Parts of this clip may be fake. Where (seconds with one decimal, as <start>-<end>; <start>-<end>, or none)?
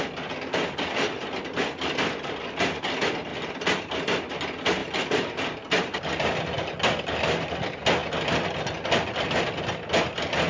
none